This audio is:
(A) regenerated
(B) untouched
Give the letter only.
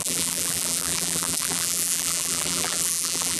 A